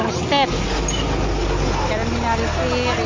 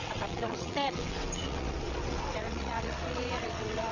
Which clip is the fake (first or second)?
second